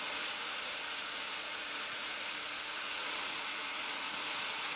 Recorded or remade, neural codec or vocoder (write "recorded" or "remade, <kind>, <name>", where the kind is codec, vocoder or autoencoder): remade, vocoder, Vocos